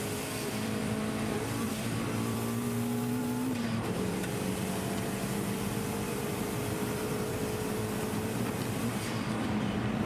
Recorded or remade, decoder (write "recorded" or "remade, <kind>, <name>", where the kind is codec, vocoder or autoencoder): remade, vocoder, BigVGAN v2